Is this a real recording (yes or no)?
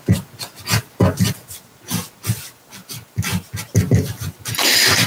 yes